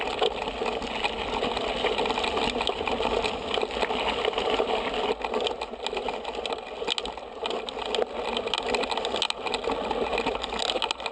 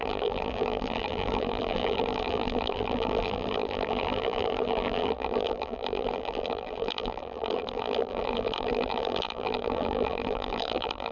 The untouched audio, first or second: first